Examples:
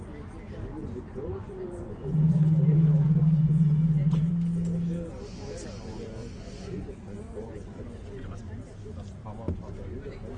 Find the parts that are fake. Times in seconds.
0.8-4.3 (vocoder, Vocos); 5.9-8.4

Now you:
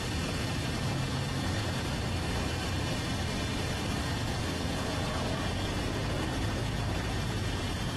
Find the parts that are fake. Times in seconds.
0.0-1.6 (vocoder, Vocos); 4.0-8.0

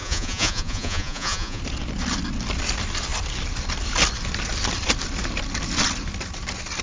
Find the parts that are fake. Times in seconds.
0.0-1.6 (vocoder, Vocos)

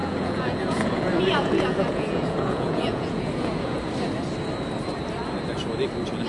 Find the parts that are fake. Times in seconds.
0.0-3.8 (vocoder, Vocos)

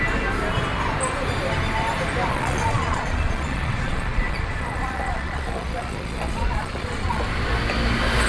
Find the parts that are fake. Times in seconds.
2.3-7.2 (vocoder, Vocos)

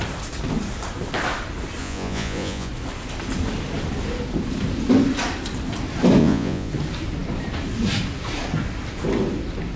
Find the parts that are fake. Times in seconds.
1.8-2.7 (vocoder, Vocos); 6.2-6.7

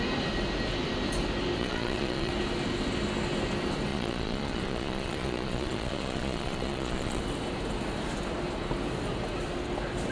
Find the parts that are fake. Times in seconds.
1.6-2.3 (vocoder, Vocos); 3.9-7.2